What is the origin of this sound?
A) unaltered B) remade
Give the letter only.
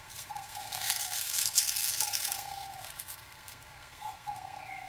B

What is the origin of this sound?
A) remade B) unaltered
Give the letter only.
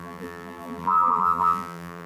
A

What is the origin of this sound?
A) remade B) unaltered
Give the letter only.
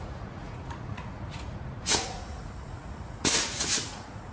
A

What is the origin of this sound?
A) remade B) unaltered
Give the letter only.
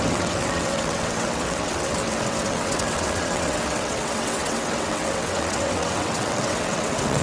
A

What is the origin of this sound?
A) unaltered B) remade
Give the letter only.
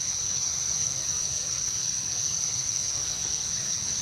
B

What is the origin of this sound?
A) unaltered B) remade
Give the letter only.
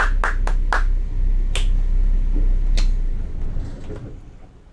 A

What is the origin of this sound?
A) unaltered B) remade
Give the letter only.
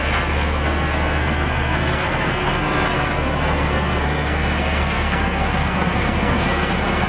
B